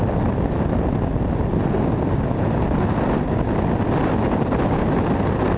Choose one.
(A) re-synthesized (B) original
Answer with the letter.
B